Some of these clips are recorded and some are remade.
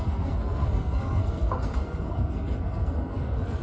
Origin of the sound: remade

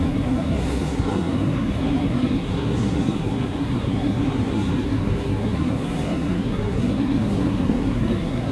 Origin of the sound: remade